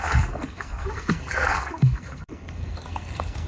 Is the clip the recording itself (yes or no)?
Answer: no